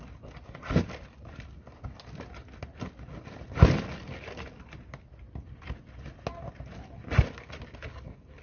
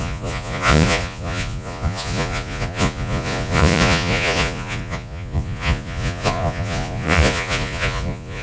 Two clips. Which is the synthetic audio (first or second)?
second